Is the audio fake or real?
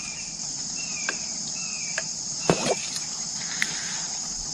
fake